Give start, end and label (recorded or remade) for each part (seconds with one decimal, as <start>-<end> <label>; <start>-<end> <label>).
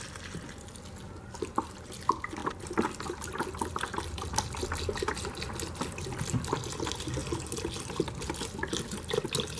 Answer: 0.0-9.6 recorded